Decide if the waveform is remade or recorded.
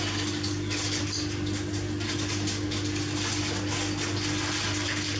recorded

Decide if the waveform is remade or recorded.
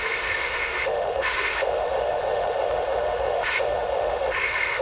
remade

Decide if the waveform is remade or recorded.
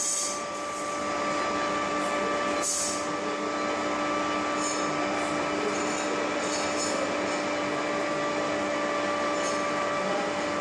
recorded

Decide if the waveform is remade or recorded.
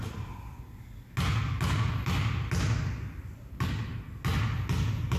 recorded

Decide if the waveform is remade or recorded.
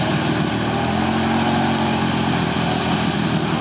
recorded